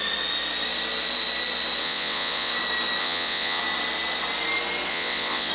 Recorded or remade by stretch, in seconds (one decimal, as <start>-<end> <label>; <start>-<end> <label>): 0.0-1.8 recorded; 1.8-2.5 remade; 2.5-3.0 recorded; 3.0-3.6 remade; 3.6-4.9 recorded; 4.9-5.5 remade